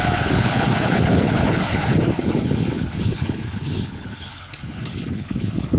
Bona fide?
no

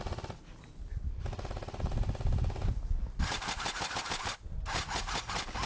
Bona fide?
yes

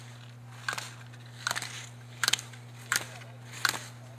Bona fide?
yes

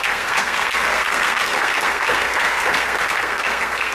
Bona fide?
no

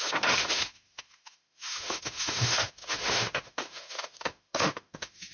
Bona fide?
no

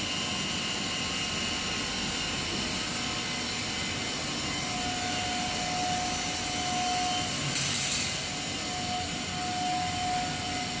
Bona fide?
yes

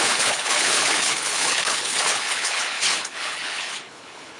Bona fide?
no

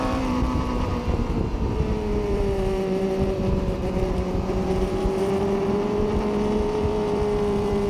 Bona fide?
no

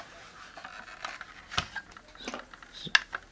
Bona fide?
yes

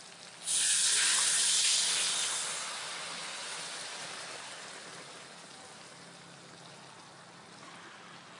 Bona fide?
yes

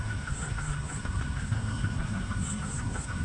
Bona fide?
no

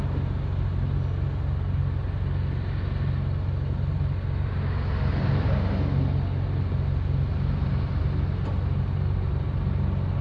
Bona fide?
yes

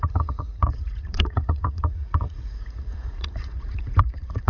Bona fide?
no